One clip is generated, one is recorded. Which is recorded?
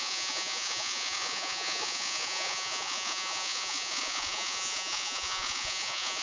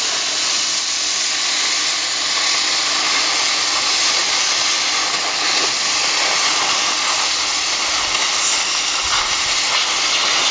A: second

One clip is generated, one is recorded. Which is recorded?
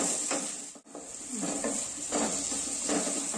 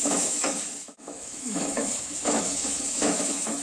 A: first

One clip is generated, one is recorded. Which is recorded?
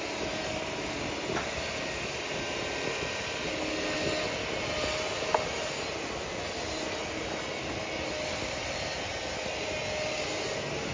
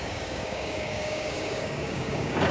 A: first